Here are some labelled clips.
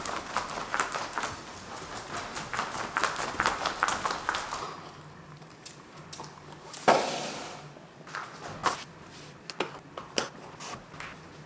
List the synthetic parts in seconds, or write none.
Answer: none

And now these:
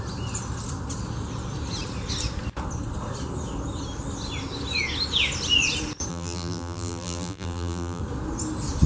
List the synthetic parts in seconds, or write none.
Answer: 6.1-8.0 (vocoder, BigVGAN v2)